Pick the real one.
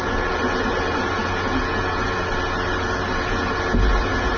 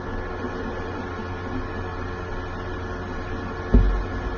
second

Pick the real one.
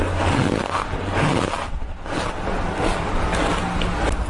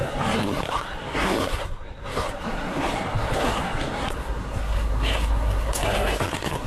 first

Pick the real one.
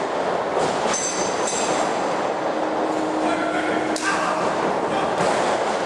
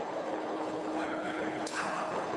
first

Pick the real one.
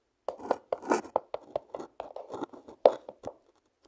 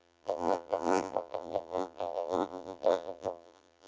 first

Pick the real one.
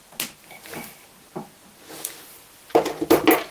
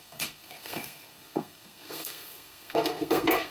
first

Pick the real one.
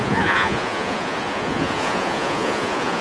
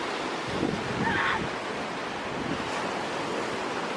second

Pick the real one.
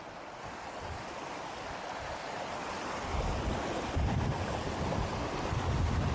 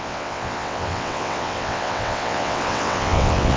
first